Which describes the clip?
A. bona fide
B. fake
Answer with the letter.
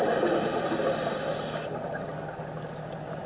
A